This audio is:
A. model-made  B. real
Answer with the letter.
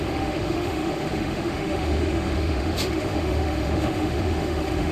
A